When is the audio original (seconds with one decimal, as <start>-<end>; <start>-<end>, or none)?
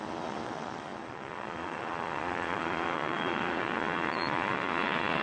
none